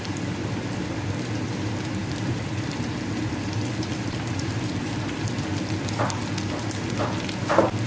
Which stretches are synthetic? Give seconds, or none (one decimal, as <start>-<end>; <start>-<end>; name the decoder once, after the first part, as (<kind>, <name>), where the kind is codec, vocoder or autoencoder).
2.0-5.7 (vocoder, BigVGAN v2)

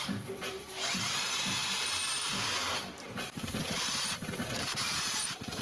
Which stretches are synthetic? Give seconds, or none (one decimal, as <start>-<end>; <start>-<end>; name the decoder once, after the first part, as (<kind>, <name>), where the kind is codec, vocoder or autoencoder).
0.0-5.6 (vocoder, BigVGAN v2)

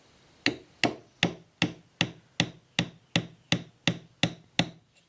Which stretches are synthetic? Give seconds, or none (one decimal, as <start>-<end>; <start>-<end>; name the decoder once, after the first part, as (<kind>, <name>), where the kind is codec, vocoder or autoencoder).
none

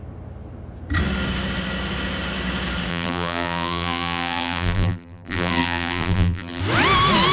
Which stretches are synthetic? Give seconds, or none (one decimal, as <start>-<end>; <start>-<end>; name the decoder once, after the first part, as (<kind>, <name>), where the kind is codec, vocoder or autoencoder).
2.9-6.6 (vocoder, BigVGAN v2)

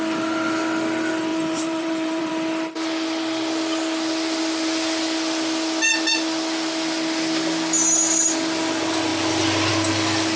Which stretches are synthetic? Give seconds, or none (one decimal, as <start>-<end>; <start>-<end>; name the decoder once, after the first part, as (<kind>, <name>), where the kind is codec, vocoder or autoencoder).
1.3-2.3 (vocoder, BigVGAN v2)

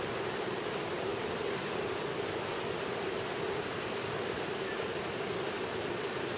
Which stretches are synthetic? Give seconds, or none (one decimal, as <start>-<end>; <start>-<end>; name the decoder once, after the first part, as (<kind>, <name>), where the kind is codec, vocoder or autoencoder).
1.1-4.9 (vocoder, BigVGAN v2)